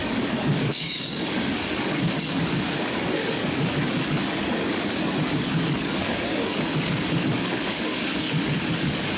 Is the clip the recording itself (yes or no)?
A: no